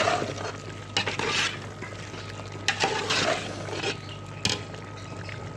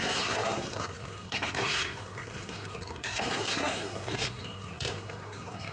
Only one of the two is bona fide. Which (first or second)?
first